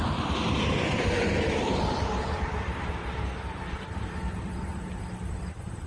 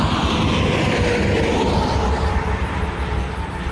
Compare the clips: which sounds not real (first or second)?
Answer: first